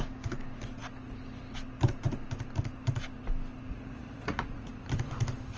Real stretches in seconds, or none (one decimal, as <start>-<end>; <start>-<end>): 0.0-3.7; 4.7-5.6